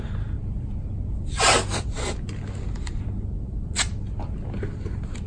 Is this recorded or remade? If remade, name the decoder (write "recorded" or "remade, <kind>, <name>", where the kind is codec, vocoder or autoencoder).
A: recorded